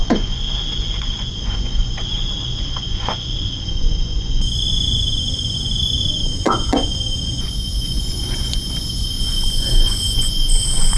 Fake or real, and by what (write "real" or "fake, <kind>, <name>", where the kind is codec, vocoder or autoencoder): fake, vocoder, Vocos